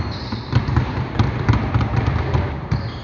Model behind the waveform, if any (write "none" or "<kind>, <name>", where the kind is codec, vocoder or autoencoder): none